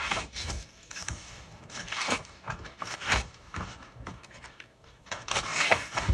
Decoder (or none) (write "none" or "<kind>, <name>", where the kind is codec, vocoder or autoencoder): codec, DAC